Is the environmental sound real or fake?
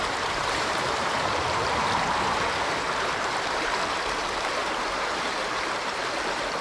fake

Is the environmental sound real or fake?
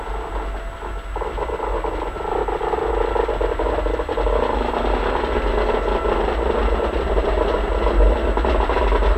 real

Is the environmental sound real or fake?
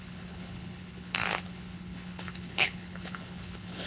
fake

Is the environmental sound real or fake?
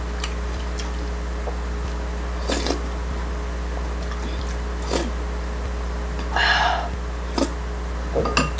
real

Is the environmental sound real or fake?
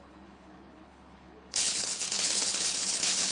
fake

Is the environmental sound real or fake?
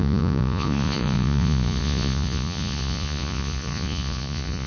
fake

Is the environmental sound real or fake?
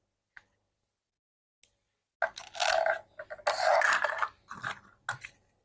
real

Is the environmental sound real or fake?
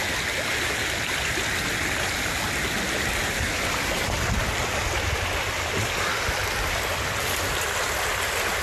real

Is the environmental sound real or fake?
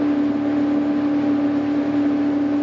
real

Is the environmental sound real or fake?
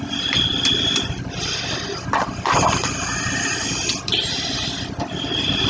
real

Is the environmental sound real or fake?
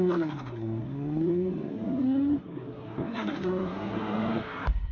fake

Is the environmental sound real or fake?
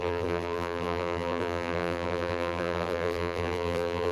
fake